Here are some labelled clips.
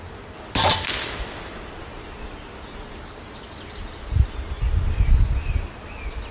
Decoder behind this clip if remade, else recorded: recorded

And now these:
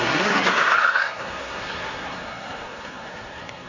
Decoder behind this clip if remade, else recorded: remade, codec, SNAC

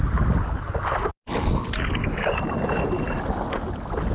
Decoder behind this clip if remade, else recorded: recorded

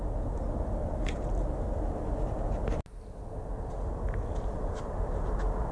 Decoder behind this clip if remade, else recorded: recorded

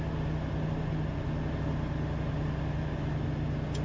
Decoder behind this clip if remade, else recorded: recorded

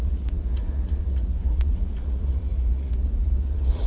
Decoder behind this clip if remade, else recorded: remade, vocoder, Vocos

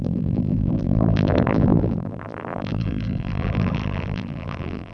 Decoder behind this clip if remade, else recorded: remade, vocoder, BigVGAN v2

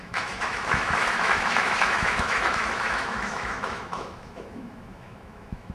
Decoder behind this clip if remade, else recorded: remade, autoencoder, DAC-VAE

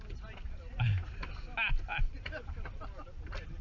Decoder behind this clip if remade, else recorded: recorded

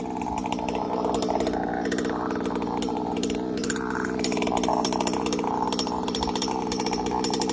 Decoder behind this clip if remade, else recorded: remade, vocoder, BigVGAN v2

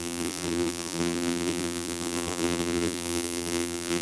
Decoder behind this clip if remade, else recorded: remade, vocoder, BigVGAN v2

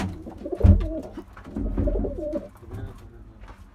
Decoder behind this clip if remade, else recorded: recorded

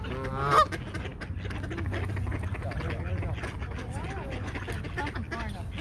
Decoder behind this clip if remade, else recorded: recorded